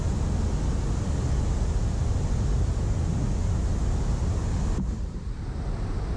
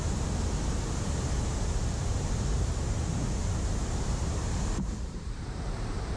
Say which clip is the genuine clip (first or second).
first